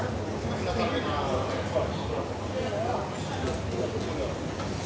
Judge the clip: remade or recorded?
recorded